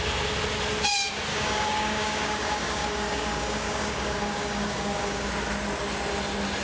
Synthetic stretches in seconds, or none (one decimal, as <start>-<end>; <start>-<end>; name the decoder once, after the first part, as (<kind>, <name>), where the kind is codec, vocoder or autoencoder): 1.3-5.3 (codec, DAC)